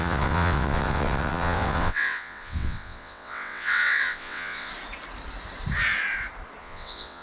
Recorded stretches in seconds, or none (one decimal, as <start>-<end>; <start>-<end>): 4.7-6.6